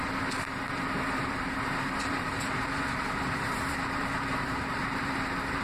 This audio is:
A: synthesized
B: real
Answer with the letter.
A